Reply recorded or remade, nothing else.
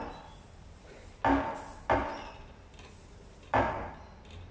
recorded